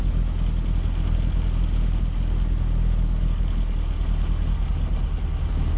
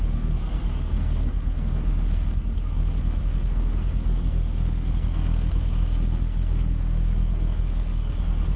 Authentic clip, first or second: first